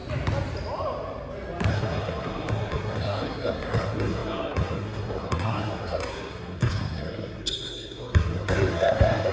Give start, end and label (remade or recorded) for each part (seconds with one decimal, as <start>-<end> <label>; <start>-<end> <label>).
0.0-1.7 recorded; 1.7-9.3 remade